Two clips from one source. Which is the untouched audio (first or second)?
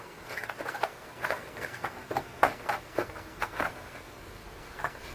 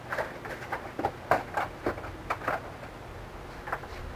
second